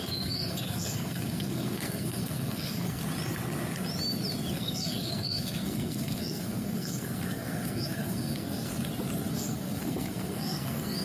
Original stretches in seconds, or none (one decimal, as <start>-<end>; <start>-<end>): 3.0-4.5; 8.7-9.3